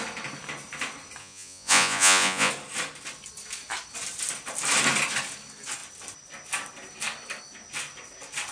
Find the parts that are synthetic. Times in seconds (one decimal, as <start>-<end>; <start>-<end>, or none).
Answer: 1.2-2.5